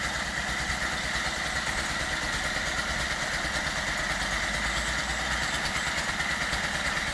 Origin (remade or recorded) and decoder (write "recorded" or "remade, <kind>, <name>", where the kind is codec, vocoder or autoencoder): recorded